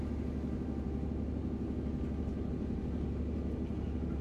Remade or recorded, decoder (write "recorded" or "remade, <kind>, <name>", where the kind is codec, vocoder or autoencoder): recorded